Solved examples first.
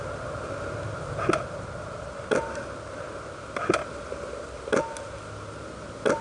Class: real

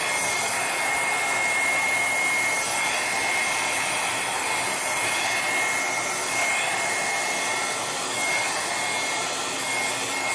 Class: real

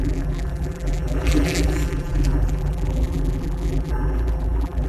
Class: fake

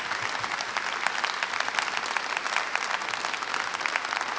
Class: real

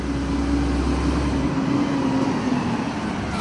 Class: real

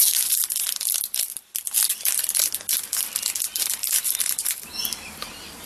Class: real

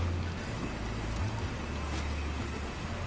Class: real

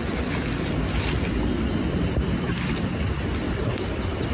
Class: real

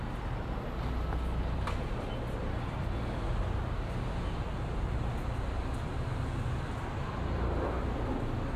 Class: real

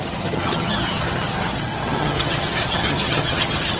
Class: fake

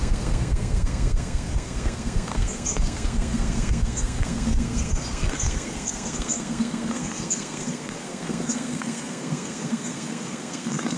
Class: fake